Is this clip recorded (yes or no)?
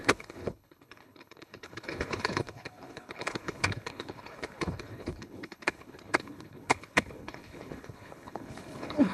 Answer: no